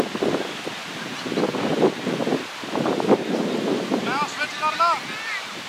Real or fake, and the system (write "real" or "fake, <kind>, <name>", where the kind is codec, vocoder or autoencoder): real